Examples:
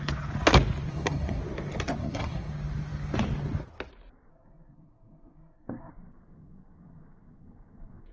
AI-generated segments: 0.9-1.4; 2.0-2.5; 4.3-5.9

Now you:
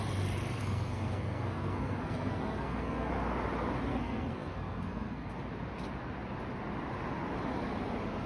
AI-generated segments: 0.6-3.1; 3.9-5.3

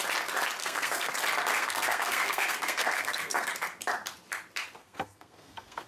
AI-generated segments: 0.6-1.1; 1.6-3.5; 4.8-5.9

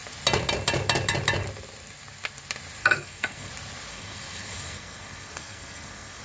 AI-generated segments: 2.8-3.5; 3.9-6.2